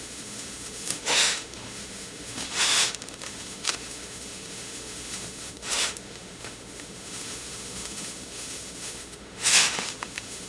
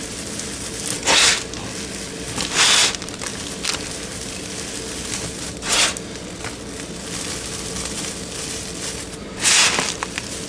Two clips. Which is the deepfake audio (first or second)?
first